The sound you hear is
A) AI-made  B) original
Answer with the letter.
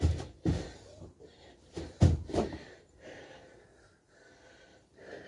A